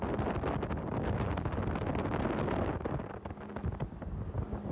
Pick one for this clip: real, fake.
real